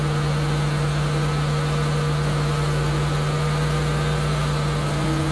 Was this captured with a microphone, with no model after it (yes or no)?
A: yes